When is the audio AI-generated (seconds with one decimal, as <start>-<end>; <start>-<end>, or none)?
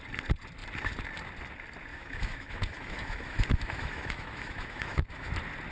1.9-5.3